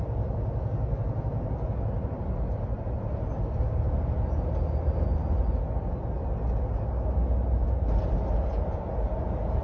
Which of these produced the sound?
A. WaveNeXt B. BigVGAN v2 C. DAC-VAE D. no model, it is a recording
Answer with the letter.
D